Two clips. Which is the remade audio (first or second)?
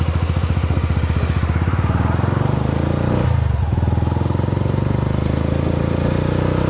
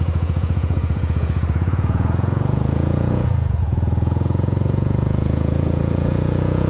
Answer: second